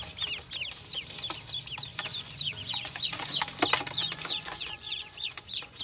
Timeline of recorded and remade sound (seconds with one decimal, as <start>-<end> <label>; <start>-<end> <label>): 0.0-1.9 recorded; 1.9-3.4 remade; 3.4-4.0 recorded; 4.0-5.8 remade

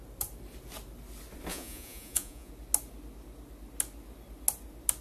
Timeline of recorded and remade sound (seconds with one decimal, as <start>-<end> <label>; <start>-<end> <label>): 0.0-1.5 recorded; 1.5-2.5 remade; 2.5-5.0 recorded